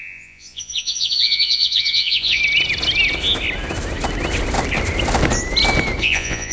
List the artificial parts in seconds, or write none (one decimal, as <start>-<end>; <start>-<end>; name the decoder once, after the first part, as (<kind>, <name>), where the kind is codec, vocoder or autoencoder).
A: 0.0-2.4 (vocoder, Vocos); 6.0-6.5